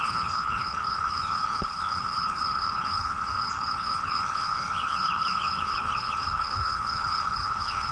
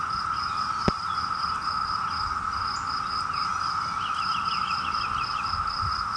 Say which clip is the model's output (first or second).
first